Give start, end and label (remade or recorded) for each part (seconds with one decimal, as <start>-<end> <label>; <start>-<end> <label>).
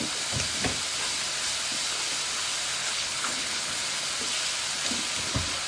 0.0-2.8 recorded; 2.8-3.8 remade; 3.8-5.7 recorded